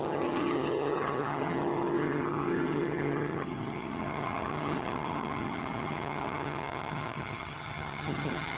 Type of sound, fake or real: fake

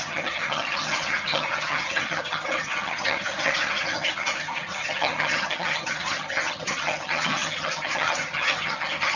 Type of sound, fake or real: fake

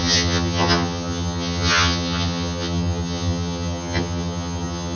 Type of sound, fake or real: fake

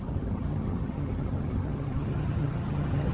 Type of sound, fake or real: fake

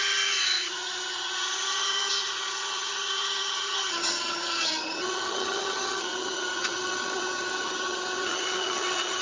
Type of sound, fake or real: fake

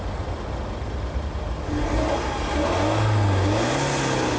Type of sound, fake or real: real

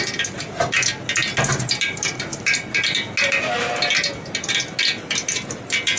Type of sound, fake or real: real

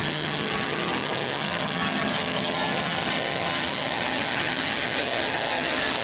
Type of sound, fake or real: fake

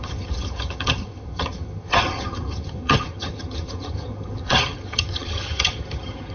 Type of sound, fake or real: fake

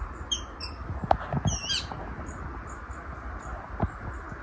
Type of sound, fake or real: real